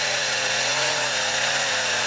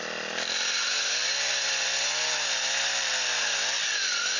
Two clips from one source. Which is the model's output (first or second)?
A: first